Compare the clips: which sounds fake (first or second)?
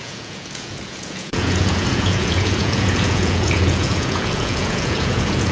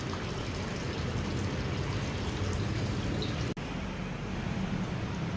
first